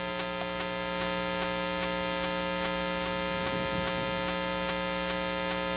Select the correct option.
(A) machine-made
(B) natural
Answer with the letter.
B